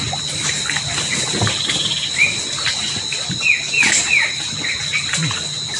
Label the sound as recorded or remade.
recorded